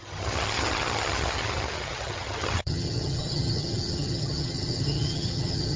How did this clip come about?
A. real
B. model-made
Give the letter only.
B